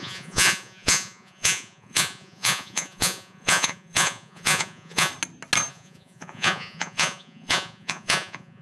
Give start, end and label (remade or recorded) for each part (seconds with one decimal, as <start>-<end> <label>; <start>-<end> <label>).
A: 0.0-5.1 remade; 5.1-5.7 recorded; 5.7-8.6 remade